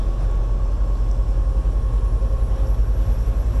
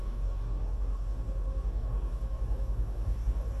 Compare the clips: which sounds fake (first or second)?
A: second